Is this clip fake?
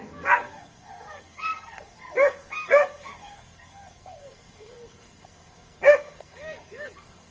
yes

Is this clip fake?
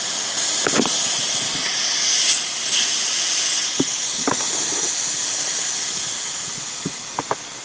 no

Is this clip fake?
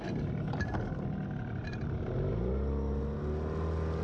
no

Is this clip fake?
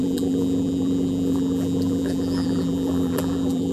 yes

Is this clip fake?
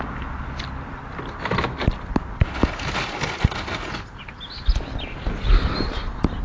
no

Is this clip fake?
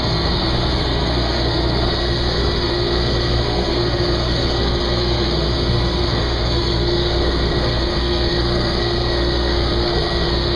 yes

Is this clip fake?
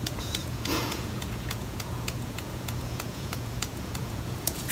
yes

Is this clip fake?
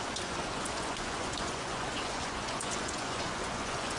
yes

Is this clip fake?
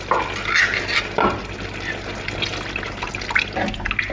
no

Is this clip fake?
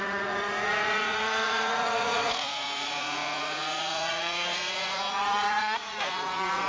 yes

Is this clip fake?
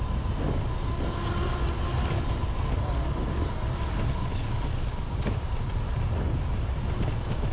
no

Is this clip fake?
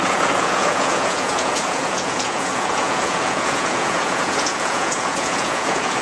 yes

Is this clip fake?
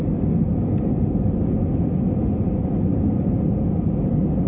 no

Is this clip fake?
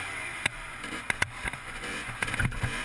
yes